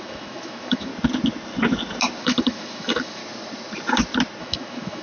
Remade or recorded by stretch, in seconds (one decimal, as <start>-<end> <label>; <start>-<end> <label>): 0.0-0.9 remade; 0.9-2.2 recorded; 2.2-3.2 remade; 3.2-4.4 recorded; 4.4-5.0 remade